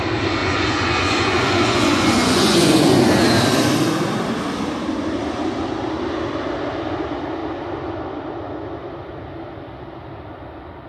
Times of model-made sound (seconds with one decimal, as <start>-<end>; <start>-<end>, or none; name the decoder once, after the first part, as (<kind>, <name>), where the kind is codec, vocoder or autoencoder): 0.4-3.0 (vocoder, Vocos)